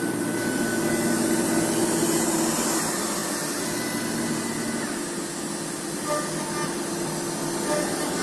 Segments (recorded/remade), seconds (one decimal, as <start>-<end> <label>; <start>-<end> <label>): 0.0-8.2 recorded